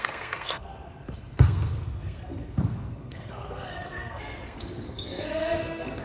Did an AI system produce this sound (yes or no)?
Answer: yes